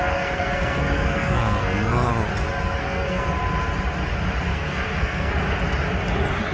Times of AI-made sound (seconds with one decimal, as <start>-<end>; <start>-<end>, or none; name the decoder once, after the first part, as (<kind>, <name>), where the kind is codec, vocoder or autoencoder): 0.0-2.1 (codec, SNAC); 2.8-3.3; 4.5-5.3